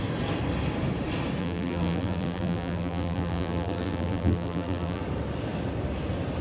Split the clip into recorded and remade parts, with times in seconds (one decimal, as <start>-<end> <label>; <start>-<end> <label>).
0.0-1.4 recorded; 1.4-5.0 remade; 5.0-6.4 recorded